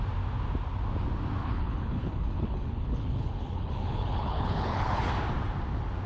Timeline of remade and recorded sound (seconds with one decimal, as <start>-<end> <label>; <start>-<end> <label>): 0.0-1.4 recorded; 1.4-5.1 remade; 5.1-6.1 recorded

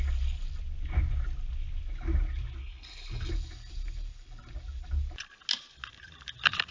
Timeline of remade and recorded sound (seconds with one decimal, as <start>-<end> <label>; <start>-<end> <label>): 0.0-2.6 recorded; 2.6-3.3 remade; 3.3-6.7 recorded

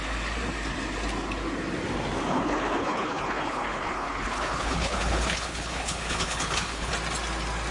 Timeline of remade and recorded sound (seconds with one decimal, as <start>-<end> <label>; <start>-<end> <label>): 0.0-2.3 recorded; 2.3-6.9 remade; 6.9-7.7 recorded